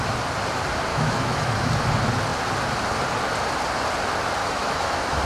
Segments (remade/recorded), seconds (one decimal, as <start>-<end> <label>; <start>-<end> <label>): 0.0-0.9 recorded; 0.9-1.7 remade; 1.7-4.4 recorded; 4.4-5.2 remade